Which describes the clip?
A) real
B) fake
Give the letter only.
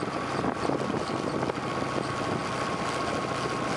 A